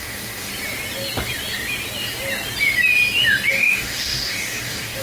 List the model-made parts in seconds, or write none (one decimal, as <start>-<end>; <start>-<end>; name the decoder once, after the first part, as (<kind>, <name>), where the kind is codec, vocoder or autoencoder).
0.0-0.5 (codec, DAC); 3.5-5.0